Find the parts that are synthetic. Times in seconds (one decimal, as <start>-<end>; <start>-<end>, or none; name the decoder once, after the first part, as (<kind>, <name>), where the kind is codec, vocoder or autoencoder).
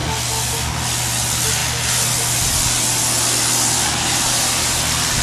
none